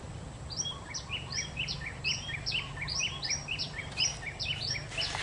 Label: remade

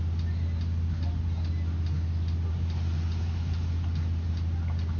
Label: recorded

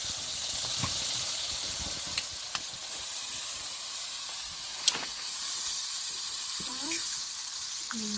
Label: remade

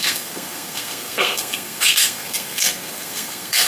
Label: remade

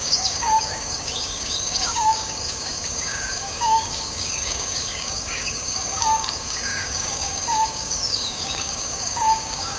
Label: remade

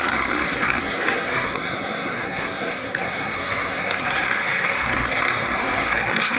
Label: remade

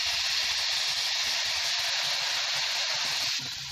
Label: recorded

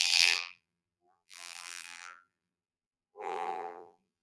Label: remade